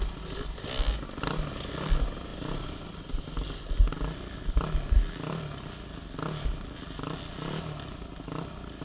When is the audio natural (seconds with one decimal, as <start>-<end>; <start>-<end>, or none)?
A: 0.0-2.3; 2.9-8.8